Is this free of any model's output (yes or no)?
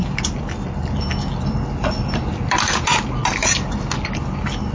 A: yes